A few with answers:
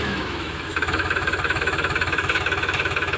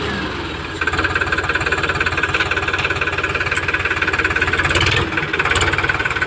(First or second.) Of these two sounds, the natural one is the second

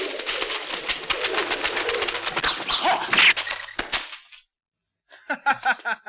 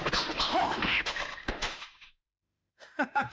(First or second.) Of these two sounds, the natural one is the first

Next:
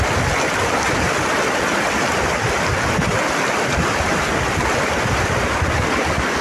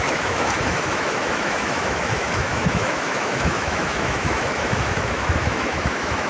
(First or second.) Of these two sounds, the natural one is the first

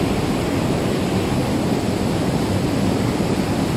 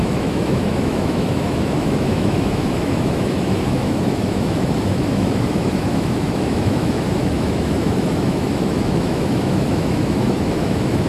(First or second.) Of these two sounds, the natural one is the first